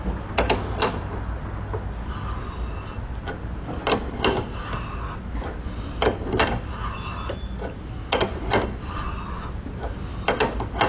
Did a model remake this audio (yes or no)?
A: no